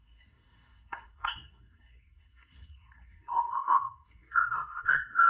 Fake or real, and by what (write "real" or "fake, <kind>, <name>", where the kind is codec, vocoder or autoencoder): fake, codec, SNAC